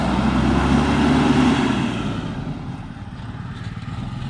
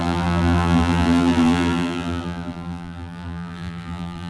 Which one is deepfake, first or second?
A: second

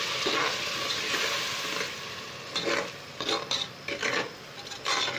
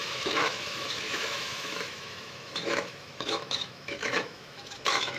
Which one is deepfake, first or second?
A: second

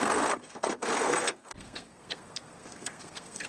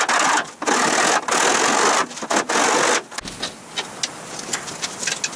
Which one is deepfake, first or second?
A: first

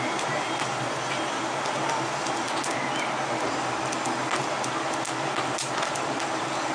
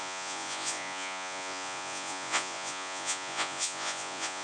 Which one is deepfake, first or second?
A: second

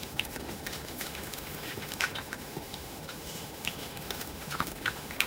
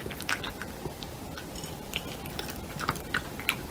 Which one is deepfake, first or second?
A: first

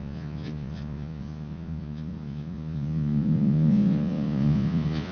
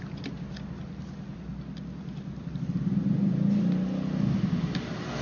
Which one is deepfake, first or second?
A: first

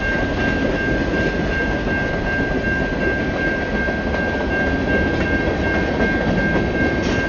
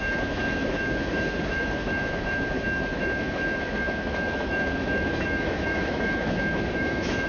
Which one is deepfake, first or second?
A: second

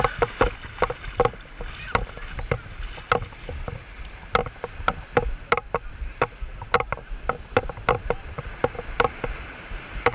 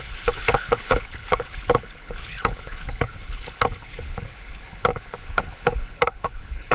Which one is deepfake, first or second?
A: second